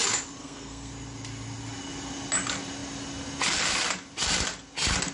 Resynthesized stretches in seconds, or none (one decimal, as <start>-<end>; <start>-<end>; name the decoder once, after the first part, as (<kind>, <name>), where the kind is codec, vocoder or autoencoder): 0.4-0.9 (codec, SNAC)